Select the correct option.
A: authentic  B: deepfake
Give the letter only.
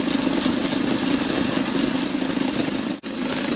A